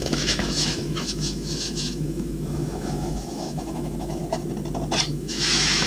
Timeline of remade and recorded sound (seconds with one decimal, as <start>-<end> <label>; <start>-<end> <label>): 0.0-4.2 remade; 4.2-5.1 recorded; 5.1-5.9 remade